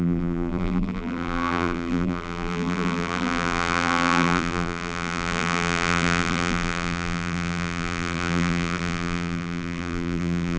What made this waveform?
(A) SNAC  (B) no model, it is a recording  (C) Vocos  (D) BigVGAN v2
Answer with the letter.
D